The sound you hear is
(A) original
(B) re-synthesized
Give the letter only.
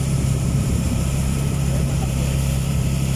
B